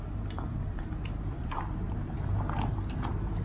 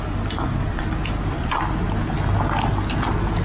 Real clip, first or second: second